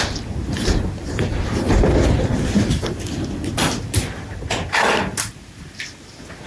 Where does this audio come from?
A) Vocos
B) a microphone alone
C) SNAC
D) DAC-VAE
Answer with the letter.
B